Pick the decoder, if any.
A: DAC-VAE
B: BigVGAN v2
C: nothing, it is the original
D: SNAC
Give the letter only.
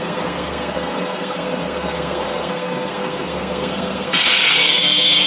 D